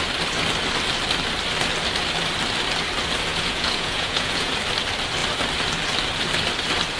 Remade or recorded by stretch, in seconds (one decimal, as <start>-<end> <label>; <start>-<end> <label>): 0.0-3.3 recorded; 3.3-4.5 remade; 4.5-7.0 recorded